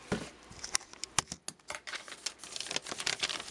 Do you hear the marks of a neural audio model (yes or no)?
no